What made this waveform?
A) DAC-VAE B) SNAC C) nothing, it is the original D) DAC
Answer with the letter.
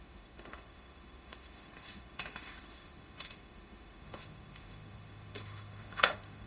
A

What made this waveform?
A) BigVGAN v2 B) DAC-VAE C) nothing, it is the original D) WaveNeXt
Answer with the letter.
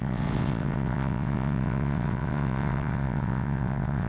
D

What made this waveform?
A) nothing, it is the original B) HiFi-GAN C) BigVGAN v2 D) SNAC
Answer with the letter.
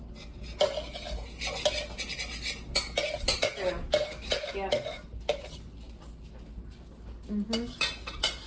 A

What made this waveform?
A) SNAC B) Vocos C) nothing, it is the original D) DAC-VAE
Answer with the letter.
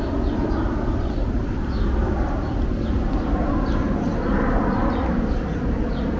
C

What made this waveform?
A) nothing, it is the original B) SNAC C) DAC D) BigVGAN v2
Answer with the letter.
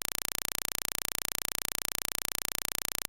A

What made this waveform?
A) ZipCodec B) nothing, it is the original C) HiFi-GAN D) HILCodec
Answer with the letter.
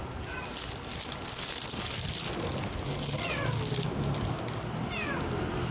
B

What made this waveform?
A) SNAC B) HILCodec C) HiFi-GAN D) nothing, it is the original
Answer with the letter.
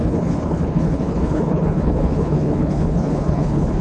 B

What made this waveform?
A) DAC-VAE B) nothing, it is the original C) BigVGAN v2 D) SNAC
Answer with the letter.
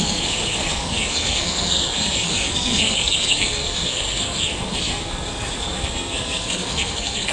D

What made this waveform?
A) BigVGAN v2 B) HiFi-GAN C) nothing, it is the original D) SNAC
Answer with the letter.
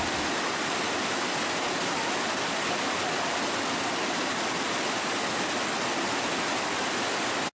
C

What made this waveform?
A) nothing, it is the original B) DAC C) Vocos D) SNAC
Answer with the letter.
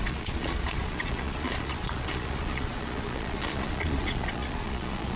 C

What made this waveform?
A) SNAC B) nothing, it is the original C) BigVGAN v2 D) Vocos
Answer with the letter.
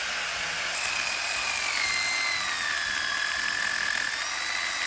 B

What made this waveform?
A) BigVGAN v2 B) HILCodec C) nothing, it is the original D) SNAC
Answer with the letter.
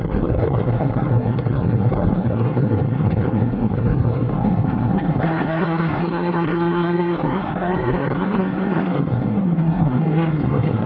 D